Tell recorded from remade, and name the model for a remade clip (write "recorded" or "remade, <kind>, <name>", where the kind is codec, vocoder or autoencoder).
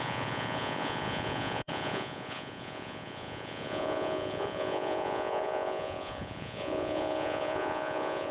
remade, vocoder, Vocos